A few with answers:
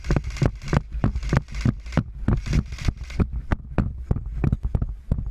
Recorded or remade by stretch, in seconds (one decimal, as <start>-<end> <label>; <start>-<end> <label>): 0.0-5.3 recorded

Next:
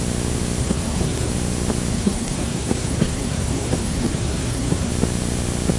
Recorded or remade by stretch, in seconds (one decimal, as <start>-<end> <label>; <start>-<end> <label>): 0.0-0.6 recorded; 0.6-1.3 remade; 1.3-1.9 recorded; 1.9-4.9 remade; 4.9-5.8 recorded

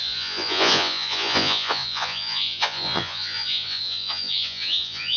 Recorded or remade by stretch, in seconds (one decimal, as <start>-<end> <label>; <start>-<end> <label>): 0.0-5.2 remade